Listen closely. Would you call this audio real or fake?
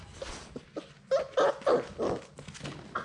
real